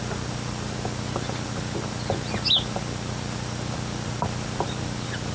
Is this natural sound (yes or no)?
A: yes